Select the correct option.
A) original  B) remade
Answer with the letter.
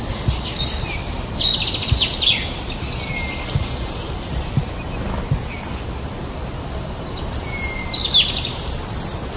A